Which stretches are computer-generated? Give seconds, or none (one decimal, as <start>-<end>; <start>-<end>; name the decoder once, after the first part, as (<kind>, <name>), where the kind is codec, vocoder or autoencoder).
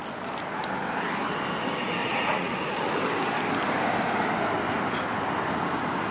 2.0-2.9 (vocoder, Vocos)